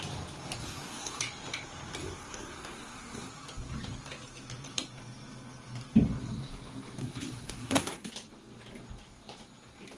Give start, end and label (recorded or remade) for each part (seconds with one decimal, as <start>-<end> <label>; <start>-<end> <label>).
0.0-0.6 recorded; 0.6-1.2 remade; 1.2-2.0 recorded; 2.0-3.3 remade; 3.3-7.0 recorded; 7.0-8.1 remade; 8.1-10.0 recorded